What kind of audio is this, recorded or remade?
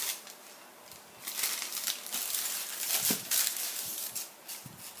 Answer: recorded